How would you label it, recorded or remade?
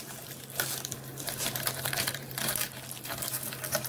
remade